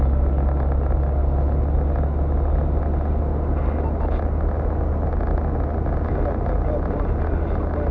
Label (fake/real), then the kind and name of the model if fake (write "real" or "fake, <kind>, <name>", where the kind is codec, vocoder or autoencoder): real